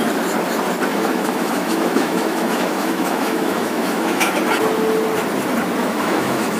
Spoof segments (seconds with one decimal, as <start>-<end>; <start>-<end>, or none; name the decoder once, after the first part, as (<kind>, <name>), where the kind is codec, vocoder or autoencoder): 0.9-4.3 (autoencoder, DAC-VAE); 5.8-6.6